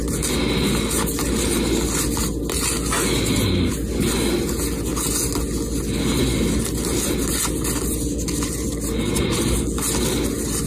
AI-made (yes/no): no